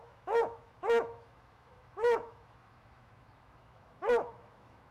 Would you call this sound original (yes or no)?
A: no